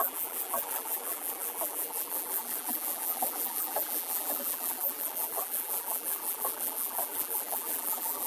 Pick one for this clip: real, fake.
fake